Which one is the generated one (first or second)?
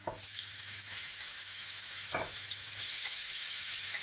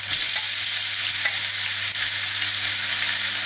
first